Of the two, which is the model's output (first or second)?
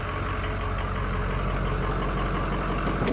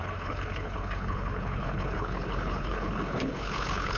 second